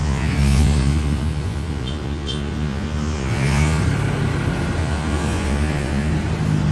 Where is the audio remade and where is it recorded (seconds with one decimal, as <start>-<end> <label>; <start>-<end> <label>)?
0.0-3.8 remade; 3.8-4.8 recorded; 4.8-6.1 remade; 6.1-6.7 recorded